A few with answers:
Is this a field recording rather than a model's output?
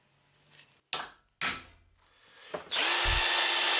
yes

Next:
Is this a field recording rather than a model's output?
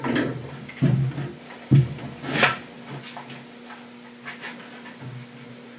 yes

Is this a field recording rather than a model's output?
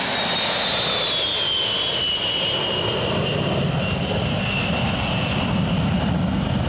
yes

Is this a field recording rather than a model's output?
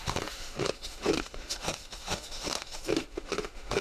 no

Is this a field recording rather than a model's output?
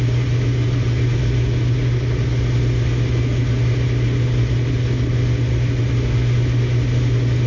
yes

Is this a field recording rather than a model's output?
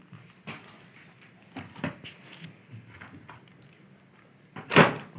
yes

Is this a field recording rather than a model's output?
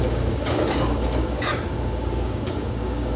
no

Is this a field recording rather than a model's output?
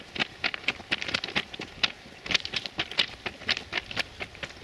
yes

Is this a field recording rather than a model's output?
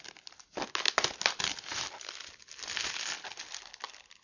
yes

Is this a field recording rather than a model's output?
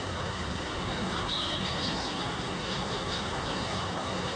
no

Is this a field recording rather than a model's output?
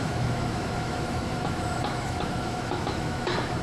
no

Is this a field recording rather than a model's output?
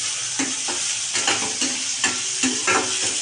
yes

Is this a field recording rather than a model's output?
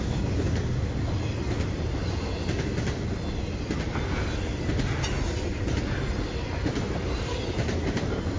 yes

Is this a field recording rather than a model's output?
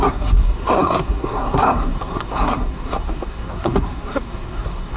no